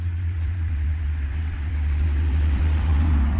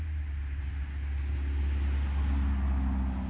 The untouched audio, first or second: second